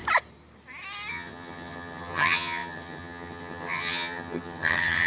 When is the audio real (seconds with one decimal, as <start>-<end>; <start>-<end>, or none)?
0.0-1.1